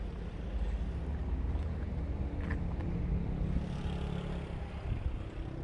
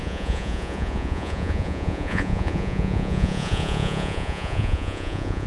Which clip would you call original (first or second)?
first